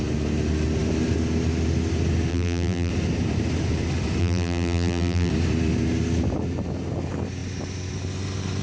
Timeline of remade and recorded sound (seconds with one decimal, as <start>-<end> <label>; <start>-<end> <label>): 0.0-2.3 recorded; 2.3-2.9 remade; 2.9-4.2 recorded; 4.2-5.3 remade; 5.3-8.6 recorded